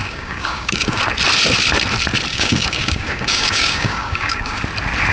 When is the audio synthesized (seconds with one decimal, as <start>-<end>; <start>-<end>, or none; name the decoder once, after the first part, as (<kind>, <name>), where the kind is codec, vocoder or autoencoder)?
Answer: 0.0-1.0 (codec, DAC); 2.3-4.6